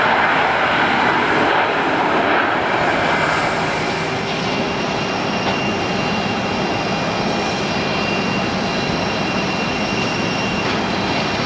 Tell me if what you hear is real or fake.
real